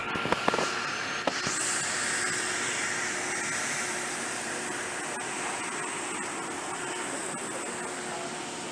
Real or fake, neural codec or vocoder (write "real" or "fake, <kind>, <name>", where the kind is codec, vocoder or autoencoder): real